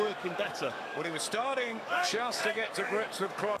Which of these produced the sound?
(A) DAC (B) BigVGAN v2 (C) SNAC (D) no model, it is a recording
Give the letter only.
A